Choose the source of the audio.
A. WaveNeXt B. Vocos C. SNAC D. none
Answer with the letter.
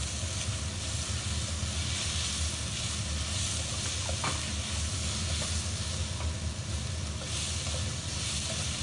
D